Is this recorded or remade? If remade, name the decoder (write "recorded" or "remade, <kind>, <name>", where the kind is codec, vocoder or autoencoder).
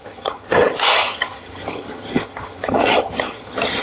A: remade, vocoder, HiFi-GAN